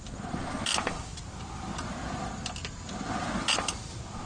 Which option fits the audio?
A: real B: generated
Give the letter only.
A